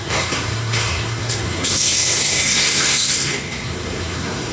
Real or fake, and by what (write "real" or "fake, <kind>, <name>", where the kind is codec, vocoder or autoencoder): fake, codec, SNAC